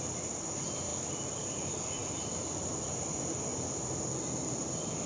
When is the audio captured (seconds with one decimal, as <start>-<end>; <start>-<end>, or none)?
0.0-5.1